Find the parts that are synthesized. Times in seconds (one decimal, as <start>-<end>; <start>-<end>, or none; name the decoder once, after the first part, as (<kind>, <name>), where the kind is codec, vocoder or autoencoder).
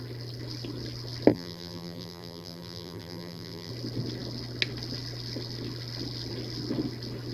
1.3-3.7 (vocoder, BigVGAN v2)